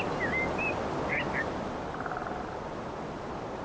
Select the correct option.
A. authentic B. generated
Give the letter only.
A